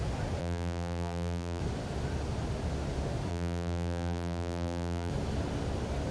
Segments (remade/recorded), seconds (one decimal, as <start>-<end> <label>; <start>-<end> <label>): 0.0-0.4 recorded; 0.4-1.6 remade; 1.6-3.3 recorded; 3.3-5.1 remade; 5.1-6.1 recorded